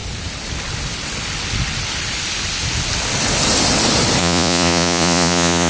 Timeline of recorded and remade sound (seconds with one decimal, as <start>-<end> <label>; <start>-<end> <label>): 0.0-4.2 recorded; 4.2-5.7 remade